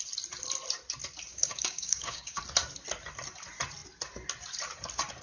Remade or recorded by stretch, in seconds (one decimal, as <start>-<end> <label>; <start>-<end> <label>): 0.0-1.3 recorded; 1.3-2.4 remade; 2.4-5.2 recorded